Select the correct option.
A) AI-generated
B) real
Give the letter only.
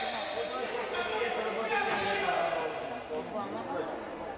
B